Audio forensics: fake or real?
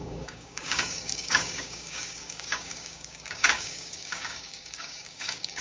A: fake